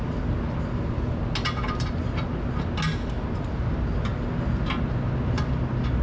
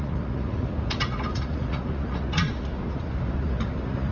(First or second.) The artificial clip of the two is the second